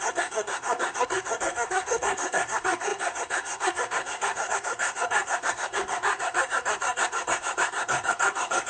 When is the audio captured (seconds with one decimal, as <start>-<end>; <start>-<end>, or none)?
none